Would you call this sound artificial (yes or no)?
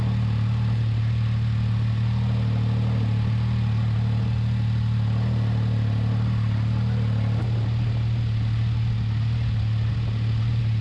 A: no